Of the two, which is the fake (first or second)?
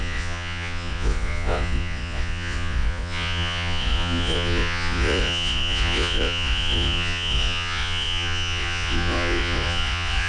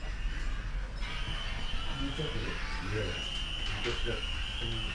first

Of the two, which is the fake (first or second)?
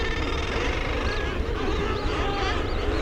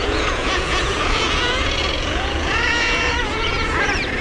second